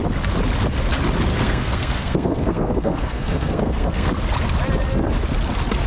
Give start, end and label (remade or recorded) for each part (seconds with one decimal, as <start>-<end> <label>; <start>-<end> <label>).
0.0-1.3 recorded; 1.3-4.1 remade; 4.1-5.9 recorded